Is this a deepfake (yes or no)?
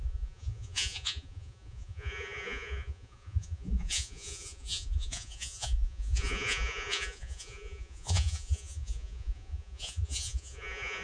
yes